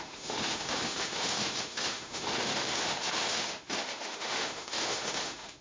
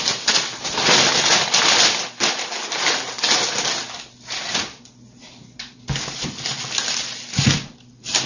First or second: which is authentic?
second